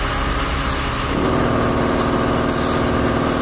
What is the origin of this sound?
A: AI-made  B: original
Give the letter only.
B